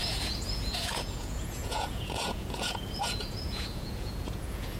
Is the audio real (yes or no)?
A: no